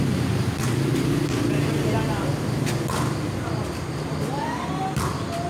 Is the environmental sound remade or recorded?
recorded